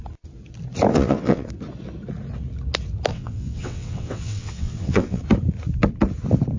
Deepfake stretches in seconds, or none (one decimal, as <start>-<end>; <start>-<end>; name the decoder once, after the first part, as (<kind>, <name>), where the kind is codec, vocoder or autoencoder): 0.9-1.5 (vocoder, WaveNeXt); 3.1-5.2